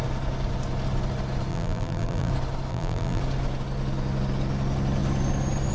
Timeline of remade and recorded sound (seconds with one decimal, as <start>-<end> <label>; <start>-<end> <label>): 0.0-1.5 recorded; 1.5-2.3 remade; 2.3-2.7 recorded; 2.7-3.2 remade; 3.2-5.7 recorded